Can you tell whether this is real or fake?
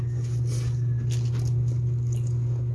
real